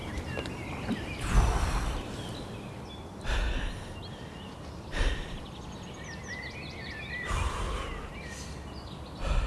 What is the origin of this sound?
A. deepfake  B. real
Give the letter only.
B